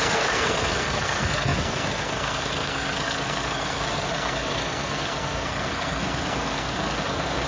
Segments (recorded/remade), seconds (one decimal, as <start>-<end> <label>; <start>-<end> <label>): 0.0-7.5 remade